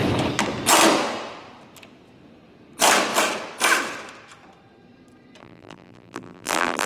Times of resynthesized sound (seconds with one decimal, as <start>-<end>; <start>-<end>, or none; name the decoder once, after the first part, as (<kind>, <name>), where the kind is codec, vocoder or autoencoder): 5.4-6.9 (vocoder, BigVGAN v2)